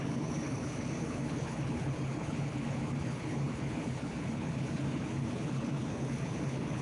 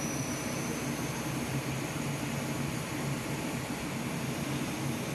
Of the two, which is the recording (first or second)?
second